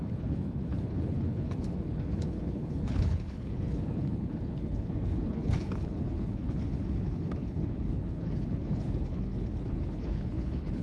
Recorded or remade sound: remade